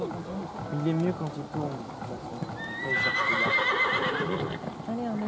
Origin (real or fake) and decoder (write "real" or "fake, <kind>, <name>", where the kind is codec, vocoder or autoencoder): real